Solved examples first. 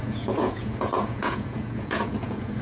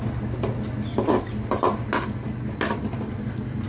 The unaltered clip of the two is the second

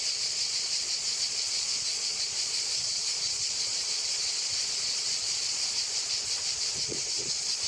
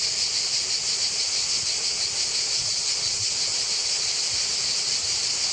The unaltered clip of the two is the second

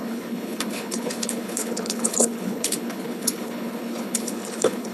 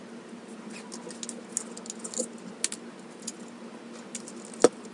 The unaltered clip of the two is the second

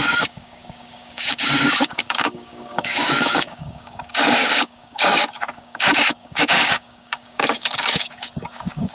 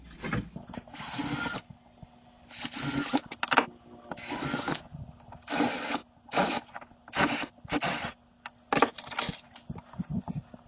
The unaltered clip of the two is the second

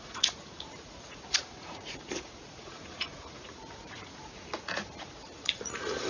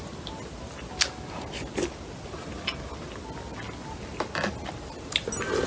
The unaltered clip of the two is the second